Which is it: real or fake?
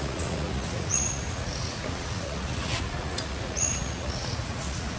fake